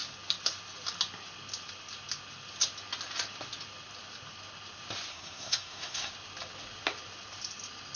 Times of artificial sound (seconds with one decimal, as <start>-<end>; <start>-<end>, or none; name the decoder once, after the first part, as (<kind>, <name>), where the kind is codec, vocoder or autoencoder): 5.1-6.1 (codec, SNAC)